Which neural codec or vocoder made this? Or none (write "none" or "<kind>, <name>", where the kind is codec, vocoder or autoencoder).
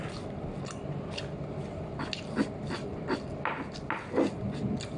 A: none